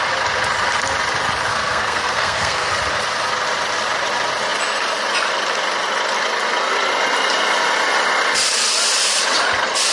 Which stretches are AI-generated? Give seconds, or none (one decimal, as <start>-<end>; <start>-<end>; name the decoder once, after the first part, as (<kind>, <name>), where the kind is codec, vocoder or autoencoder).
1.5-2.7 (codec, SNAC)